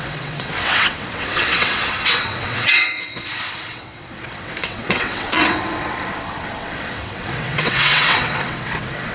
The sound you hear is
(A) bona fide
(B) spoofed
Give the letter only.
B